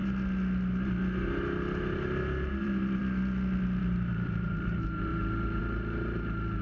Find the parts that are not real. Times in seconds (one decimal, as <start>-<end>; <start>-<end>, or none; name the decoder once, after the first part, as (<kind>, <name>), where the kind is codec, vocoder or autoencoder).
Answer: 2.6-3.0 (vocoder, BigVGAN v2); 3.8-6.6